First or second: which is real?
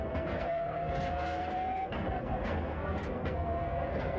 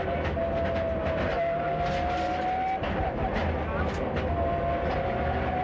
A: second